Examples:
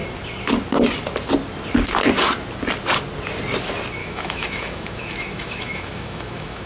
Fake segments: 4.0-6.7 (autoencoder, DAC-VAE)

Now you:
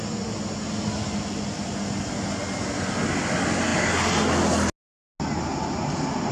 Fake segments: none

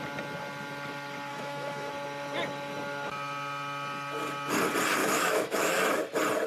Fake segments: 1.3-1.9 (autoencoder, DAC-VAE); 5.0-6.0

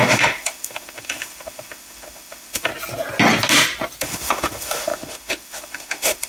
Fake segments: 0.0-2.7 (autoencoder, DAC-VAE); 4.0-6.3

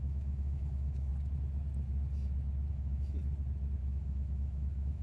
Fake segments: 0.0-1.1 (autoencoder, DAC-VAE); 2.7-3.2; 3.8-5.0